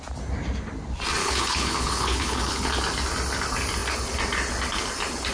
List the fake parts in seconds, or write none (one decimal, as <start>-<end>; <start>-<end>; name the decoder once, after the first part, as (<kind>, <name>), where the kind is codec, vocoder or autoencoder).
1.2-2.7 (codec, HILCodec)